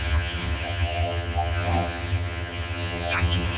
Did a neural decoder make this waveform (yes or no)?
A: yes